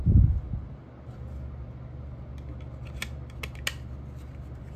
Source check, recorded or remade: recorded